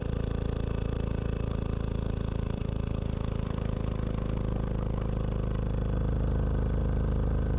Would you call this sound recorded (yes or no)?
no